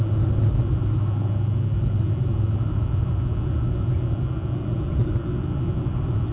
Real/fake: real